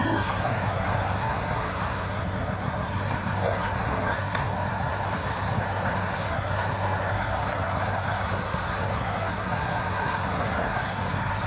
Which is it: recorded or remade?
remade